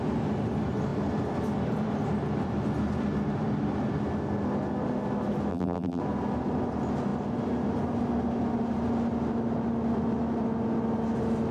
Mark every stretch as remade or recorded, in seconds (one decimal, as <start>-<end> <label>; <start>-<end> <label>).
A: 0.0-5.5 recorded; 5.5-6.0 remade; 6.0-11.5 recorded